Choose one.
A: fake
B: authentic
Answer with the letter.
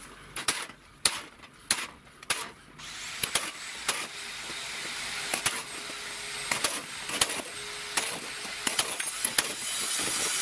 B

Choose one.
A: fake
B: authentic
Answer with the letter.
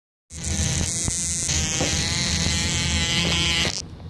B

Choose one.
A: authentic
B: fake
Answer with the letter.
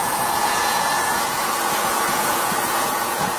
B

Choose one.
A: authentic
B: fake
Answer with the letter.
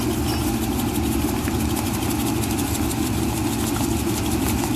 A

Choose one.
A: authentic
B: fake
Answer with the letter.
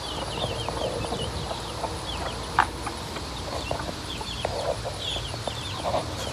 A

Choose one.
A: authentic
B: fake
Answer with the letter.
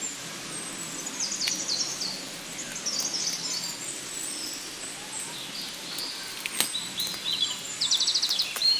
A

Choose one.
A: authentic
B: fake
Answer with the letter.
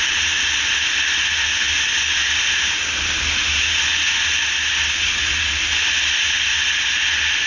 A